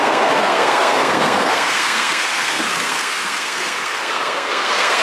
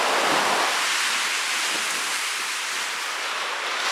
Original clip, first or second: second